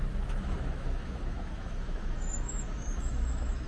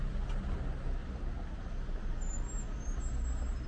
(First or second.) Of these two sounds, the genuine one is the second